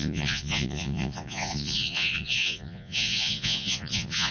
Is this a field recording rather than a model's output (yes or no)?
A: no